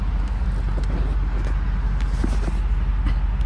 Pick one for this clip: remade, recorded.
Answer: recorded